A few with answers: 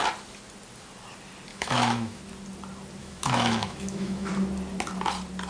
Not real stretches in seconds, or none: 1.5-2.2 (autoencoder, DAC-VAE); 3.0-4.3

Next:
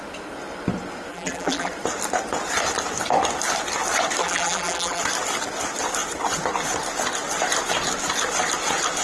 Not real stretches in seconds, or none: 1.1-1.7 (vocoder, BigVGAN v2); 4.2-5.0

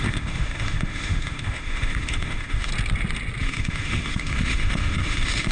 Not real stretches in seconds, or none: 0.0-2.7 (autoencoder, DAC-VAE); 3.4-5.5

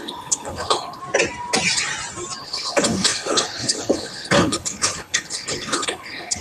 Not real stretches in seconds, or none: 0.0-1.0 (codec, HILCodec); 2.4-6.4

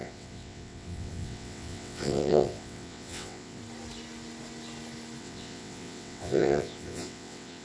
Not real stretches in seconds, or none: 0.0-3.6 (vocoder, WaveNeXt); 5.2-7.6